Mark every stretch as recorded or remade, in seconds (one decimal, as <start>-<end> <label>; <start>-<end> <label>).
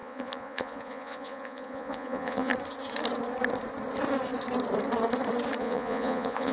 0.0-2.5 remade; 2.5-5.6 recorded; 5.6-6.5 remade